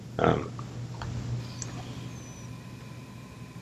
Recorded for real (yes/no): yes